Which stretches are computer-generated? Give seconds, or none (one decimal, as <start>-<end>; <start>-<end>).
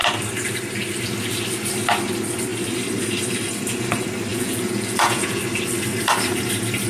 4.3-5.4